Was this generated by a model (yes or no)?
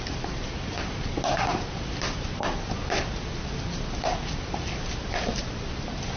no